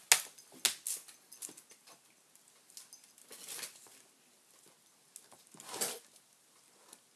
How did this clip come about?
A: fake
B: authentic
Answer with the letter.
B